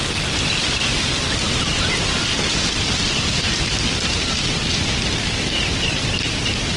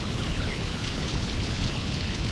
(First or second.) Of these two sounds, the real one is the first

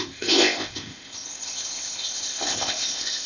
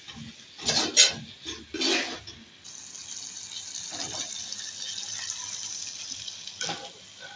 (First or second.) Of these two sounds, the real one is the second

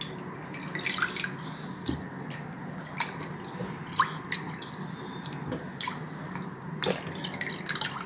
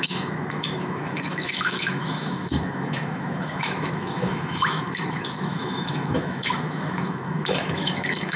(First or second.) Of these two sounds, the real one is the first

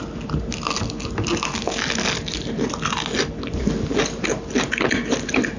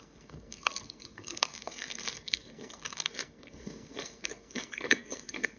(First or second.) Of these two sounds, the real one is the first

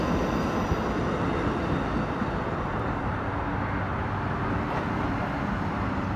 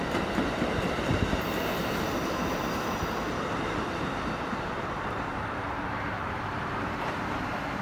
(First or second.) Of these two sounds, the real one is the first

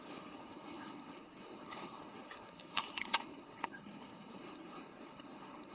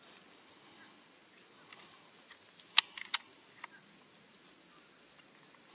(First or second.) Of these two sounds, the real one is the second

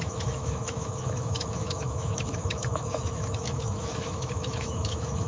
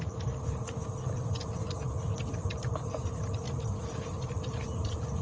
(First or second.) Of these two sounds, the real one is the second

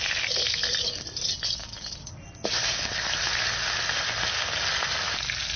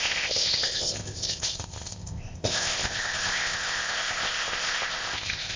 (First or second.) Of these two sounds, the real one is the first